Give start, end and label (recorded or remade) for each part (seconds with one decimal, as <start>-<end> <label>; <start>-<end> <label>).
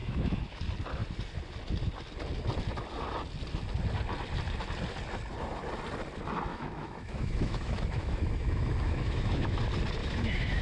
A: 0.0-0.6 remade; 0.6-6.5 recorded; 6.5-9.6 remade; 9.6-10.0 recorded; 10.0-10.6 remade